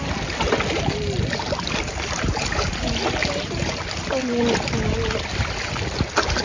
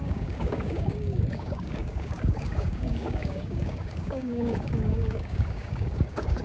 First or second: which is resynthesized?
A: second